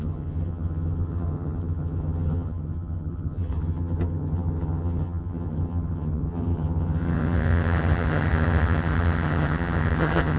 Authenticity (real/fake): fake